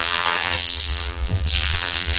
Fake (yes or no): yes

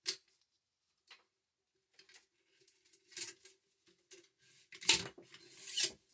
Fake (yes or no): no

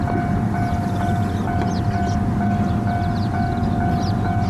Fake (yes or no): no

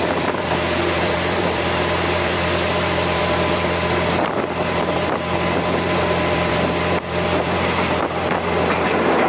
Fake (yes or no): yes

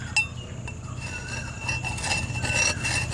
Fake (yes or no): no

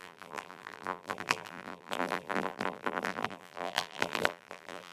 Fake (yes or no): yes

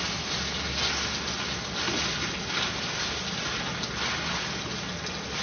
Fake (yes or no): no